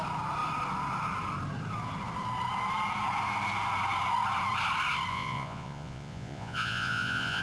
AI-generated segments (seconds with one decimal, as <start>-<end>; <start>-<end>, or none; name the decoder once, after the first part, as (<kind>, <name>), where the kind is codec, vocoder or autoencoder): 5.1-7.4 (vocoder, Vocos)